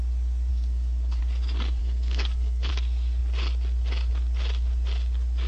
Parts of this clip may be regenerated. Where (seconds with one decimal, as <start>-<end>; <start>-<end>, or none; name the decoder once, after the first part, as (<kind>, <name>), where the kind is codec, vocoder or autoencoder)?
0.5-1.2 (codec, SNAC); 1.8-2.7